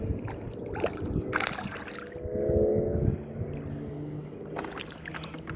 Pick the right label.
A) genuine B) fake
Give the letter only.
A